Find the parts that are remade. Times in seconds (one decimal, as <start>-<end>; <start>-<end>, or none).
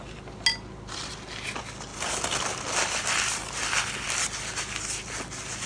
none